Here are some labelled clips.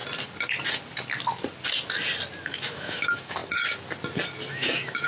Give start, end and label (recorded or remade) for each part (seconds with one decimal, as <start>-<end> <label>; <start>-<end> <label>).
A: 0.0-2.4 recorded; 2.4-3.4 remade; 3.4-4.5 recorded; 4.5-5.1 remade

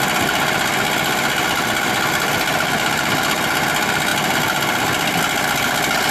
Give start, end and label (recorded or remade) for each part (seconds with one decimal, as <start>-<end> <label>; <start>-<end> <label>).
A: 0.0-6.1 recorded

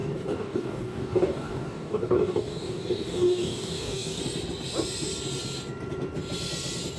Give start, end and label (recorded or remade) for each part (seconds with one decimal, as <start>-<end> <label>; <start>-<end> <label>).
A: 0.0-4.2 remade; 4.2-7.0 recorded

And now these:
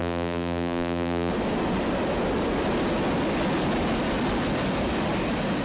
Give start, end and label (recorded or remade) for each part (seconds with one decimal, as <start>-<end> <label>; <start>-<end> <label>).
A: 0.0-1.3 remade; 1.3-5.6 recorded

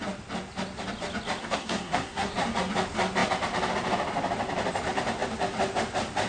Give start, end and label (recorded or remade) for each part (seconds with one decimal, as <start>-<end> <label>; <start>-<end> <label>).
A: 0.0-1.4 recorded; 1.4-2.3 remade; 2.3-6.3 recorded

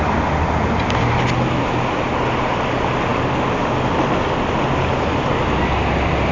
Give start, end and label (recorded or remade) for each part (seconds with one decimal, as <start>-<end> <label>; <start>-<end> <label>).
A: 0.0-6.3 recorded